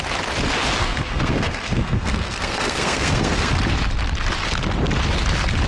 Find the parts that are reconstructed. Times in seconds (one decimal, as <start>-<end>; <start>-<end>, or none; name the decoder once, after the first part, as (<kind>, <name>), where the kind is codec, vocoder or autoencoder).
0.8-3.5 (codec, SNAC)